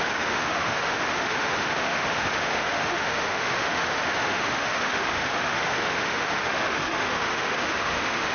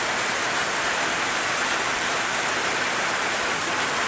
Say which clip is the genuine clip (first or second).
second